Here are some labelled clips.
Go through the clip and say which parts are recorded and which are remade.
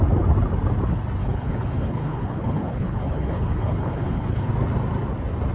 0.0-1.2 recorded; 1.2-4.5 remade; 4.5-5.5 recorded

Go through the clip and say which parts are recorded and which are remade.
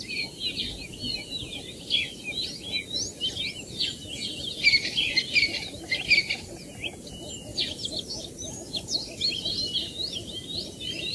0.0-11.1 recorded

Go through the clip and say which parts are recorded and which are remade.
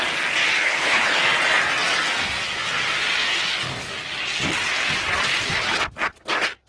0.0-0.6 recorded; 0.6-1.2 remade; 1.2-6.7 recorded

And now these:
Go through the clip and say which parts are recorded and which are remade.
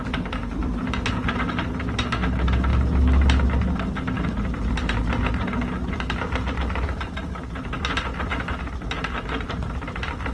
0.0-10.3 recorded